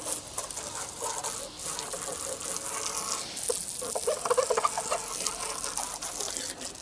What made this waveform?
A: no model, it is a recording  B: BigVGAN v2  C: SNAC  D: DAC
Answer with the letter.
A